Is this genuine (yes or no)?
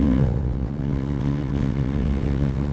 no